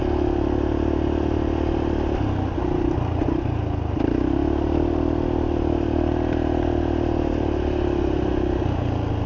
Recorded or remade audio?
recorded